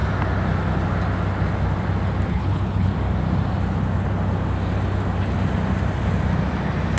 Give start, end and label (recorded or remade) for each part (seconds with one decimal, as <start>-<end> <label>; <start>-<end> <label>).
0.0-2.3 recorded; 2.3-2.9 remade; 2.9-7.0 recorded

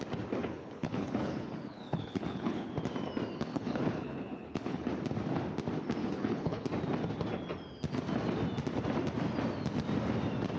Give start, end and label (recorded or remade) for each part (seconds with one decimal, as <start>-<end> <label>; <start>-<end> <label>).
0.0-0.4 recorded; 0.4-2.7 remade; 2.7-3.5 recorded; 3.5-4.9 remade; 4.9-6.0 recorded; 6.0-6.7 remade; 6.7-10.6 recorded

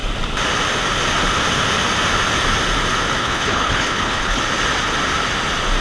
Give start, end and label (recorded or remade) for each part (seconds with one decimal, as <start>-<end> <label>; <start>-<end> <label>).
0.0-3.2 recorded; 3.2-4.4 remade; 4.4-5.8 recorded

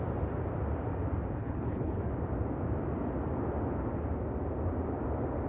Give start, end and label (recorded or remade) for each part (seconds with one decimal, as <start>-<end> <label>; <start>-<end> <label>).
0.0-1.4 recorded; 1.4-2.0 remade; 2.0-5.5 recorded

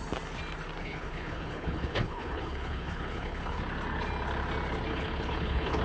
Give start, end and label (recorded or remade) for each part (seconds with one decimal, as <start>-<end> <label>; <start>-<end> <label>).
0.0-0.8 recorded; 0.8-3.6 remade; 3.6-4.9 recorded; 4.9-5.8 remade

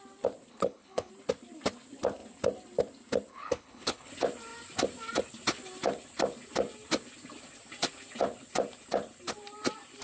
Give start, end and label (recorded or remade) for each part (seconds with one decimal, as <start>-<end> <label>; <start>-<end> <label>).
0.0-0.5 recorded; 0.5-1.1 remade; 1.1-3.3 recorded; 3.3-4.1 remade; 4.1-10.0 recorded